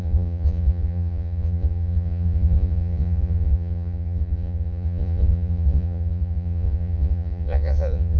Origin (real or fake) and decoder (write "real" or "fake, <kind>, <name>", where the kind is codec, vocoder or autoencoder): fake, vocoder, Vocos